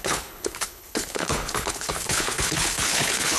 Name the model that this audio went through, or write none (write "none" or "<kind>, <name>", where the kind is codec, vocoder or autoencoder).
codec, HILCodec